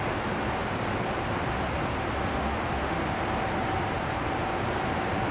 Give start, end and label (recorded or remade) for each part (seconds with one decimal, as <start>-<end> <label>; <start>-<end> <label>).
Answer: 0.0-2.3 recorded; 2.3-3.0 remade; 3.0-5.3 recorded